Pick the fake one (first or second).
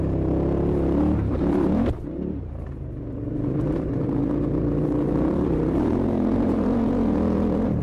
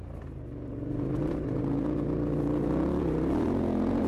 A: first